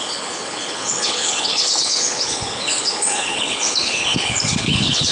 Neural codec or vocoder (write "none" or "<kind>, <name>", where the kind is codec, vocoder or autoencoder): codec, HILCodec